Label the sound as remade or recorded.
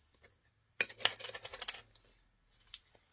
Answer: recorded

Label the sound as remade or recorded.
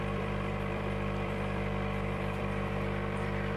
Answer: remade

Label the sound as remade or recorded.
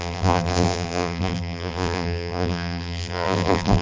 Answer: remade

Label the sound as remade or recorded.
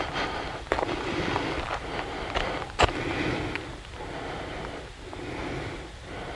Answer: recorded